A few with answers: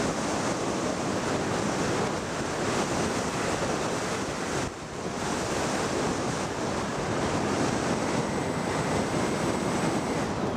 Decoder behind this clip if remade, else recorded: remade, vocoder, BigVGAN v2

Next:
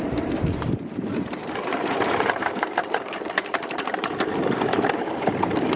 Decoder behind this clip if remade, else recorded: remade, vocoder, BigVGAN v2